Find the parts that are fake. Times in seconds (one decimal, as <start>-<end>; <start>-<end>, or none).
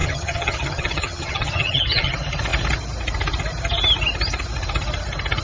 0.0-2.1